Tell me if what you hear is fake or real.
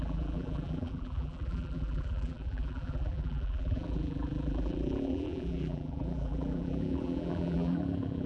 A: fake